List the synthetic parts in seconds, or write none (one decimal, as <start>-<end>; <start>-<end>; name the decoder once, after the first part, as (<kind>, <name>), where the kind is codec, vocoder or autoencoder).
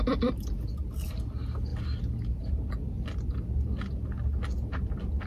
none